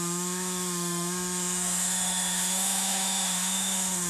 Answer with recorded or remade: remade